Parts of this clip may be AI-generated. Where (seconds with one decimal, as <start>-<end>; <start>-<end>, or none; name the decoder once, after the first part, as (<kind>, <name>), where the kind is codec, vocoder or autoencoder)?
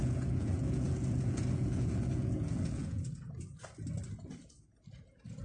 0.0-3.2 (vocoder, Vocos)